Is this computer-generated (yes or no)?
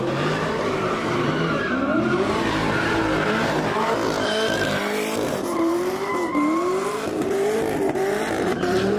yes